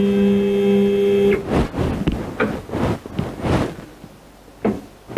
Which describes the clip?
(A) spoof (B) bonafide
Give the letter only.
B